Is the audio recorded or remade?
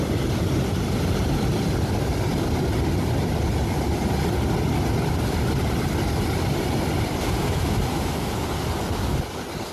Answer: recorded